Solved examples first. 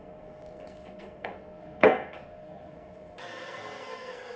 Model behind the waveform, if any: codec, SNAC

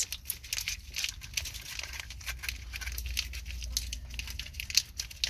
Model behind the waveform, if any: none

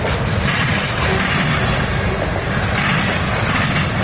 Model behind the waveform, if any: none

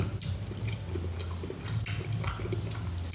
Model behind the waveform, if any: none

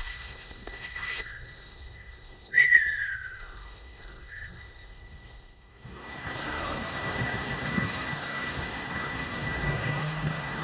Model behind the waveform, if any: codec, SNAC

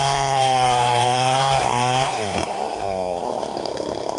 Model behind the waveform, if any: codec, SNAC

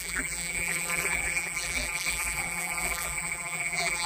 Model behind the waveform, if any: vocoder, BigVGAN v2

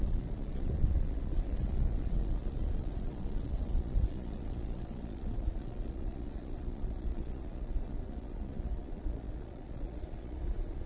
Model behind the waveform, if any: vocoder, Vocos